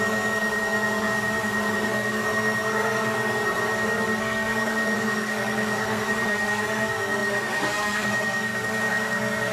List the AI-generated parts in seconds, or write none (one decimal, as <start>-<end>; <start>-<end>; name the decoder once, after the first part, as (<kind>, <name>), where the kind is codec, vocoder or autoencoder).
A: 0.0-3.6 (codec, SNAC); 4.2-9.5